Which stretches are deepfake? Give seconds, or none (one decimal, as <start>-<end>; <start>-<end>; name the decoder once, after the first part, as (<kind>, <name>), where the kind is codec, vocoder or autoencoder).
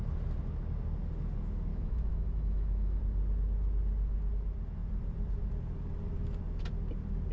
1.7-3.0 (autoencoder, DAC-VAE)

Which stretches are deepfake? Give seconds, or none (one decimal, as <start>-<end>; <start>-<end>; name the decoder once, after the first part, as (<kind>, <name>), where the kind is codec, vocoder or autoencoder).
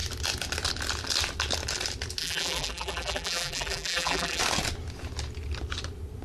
2.2-4.4 (vocoder, BigVGAN v2)